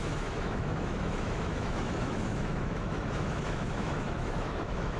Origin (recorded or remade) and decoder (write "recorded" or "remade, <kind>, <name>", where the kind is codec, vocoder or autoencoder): remade, autoencoder, DAC-VAE